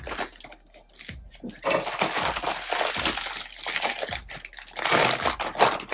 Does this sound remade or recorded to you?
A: recorded